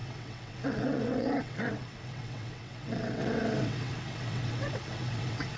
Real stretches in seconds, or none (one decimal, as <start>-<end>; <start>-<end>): none